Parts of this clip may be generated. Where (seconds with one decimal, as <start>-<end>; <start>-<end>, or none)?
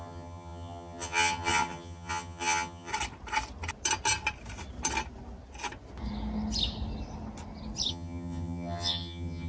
0.0-2.9; 7.9-9.5